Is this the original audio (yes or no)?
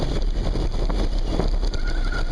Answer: yes